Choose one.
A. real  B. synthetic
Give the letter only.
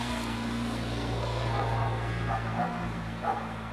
B